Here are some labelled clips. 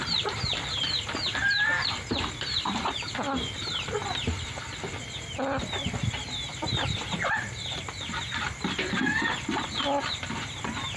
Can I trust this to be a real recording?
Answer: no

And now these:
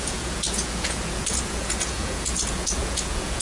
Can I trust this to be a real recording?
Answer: no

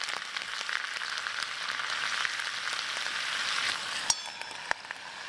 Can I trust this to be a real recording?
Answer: yes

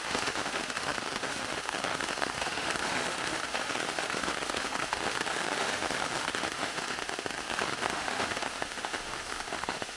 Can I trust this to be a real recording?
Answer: no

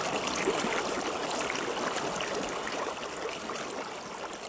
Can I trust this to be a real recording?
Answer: yes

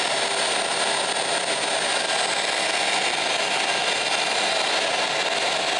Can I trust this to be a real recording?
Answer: yes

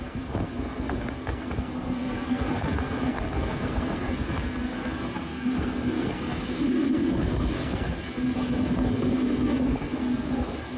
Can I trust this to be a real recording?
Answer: no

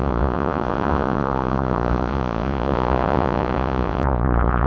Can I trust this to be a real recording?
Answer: no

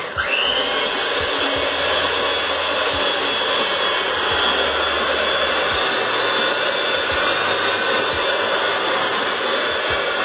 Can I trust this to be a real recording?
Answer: yes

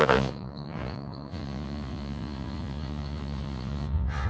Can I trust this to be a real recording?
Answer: no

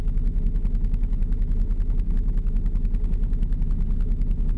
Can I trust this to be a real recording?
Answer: yes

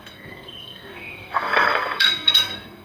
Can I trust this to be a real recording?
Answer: no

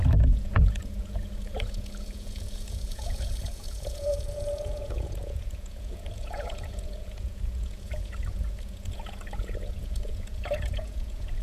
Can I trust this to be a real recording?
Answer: no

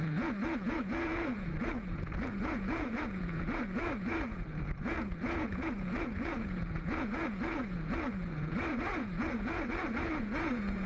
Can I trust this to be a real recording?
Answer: no